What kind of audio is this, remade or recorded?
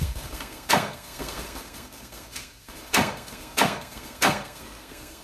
remade